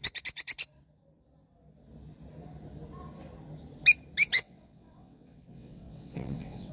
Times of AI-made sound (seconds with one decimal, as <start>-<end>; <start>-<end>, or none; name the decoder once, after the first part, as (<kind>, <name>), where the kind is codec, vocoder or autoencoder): 4.3-6.7 (vocoder, WaveNeXt)